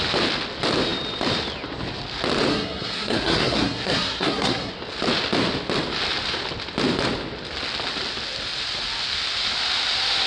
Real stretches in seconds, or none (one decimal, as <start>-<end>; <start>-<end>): 0.0-2.5; 4.7-10.3